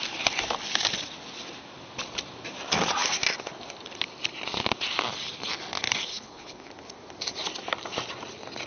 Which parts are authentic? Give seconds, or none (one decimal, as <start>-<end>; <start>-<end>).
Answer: 0.0-6.1; 6.7-8.7

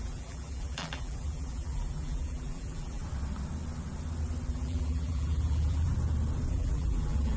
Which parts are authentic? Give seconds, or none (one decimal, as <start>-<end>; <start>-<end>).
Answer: 3.0-4.5; 5.9-6.5

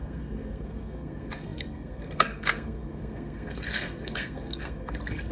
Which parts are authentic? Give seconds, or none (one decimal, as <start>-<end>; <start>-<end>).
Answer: none